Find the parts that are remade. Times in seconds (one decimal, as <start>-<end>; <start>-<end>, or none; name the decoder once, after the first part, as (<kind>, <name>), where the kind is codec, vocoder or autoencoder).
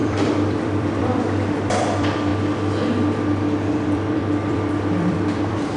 0.0-2.3 (vocoder, BigVGAN v2); 3.7-5.8